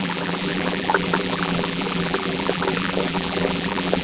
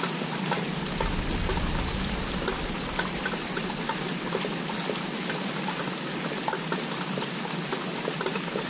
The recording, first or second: second